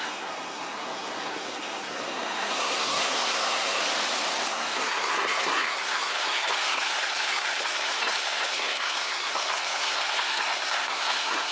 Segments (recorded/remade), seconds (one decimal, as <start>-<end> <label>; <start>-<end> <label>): 0.0-3.8 remade; 3.8-4.5 recorded; 4.5-11.5 remade